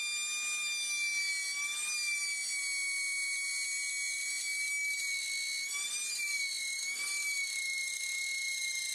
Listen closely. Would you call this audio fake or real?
real